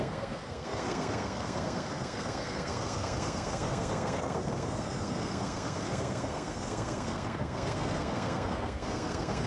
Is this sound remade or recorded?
remade